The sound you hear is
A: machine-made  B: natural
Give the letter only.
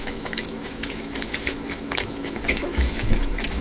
A